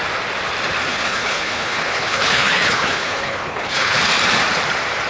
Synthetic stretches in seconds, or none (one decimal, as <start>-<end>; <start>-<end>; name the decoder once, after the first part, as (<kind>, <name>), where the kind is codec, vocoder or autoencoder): 0.9-4.0 (codec, HILCodec)